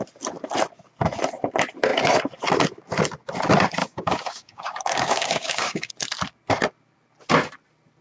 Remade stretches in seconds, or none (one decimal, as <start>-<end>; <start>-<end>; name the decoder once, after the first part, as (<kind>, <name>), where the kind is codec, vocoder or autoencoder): 3.8-5.9 (codec, DAC)